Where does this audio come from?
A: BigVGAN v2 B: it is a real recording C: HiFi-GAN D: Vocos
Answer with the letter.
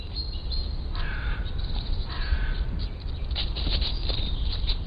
B